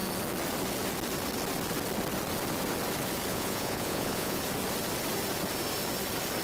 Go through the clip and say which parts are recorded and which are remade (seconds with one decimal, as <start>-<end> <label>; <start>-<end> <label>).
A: 0.0-3.3 recorded; 3.3-4.4 remade; 4.4-6.4 recorded